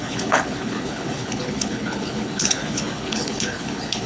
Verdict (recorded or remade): remade